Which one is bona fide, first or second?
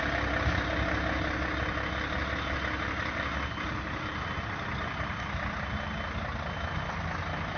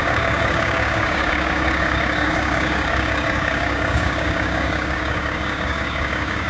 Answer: first